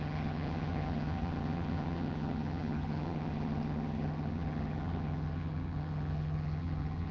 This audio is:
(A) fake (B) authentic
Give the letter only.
A